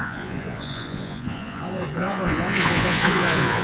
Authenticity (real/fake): fake